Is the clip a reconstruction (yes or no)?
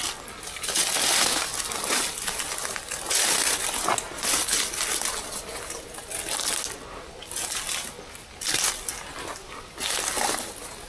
no